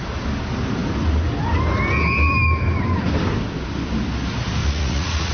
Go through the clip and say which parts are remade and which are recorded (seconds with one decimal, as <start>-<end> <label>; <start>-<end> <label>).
0.0-4.6 recorded; 4.6-5.3 remade